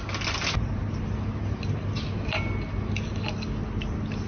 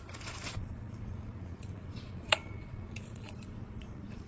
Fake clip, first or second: second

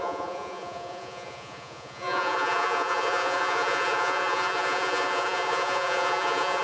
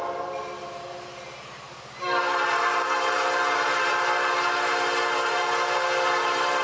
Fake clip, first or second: first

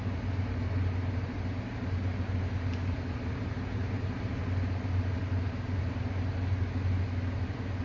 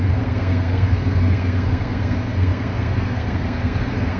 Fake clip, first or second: second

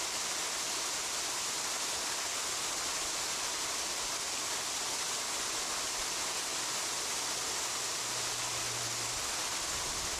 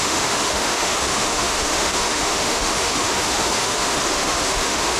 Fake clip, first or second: second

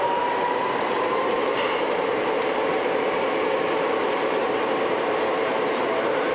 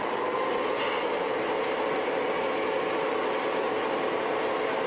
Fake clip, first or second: first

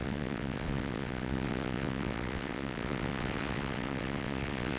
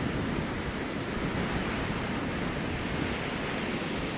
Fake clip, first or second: first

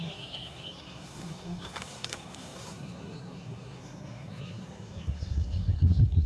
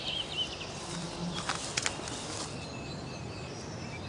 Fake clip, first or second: first